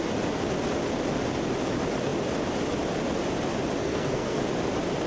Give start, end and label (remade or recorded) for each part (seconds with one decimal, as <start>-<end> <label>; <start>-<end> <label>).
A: 0.0-3.8 recorded; 3.8-4.4 remade; 4.4-5.1 recorded